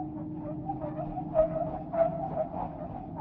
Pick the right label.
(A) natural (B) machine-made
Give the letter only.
A